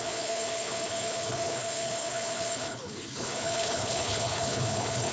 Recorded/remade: remade